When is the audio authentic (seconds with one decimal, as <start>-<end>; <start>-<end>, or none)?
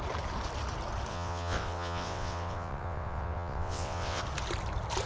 0.0-1.1; 4.2-5.1